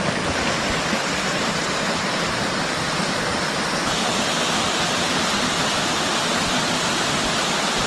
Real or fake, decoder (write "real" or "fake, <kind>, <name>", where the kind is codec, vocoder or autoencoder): real